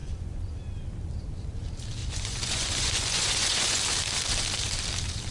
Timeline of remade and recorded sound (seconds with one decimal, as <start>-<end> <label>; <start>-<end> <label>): 0.0-0.5 remade; 0.5-2.0 recorded; 2.0-3.8 remade; 3.8-5.3 recorded